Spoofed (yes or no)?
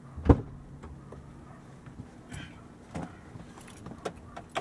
no